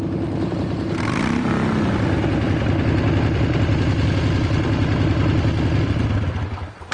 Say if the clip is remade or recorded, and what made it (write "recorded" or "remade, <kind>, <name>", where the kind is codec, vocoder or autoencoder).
recorded